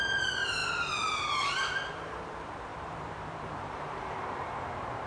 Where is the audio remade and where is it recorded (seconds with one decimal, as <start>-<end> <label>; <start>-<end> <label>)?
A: 0.0-5.1 remade